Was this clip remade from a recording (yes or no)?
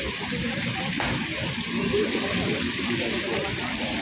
yes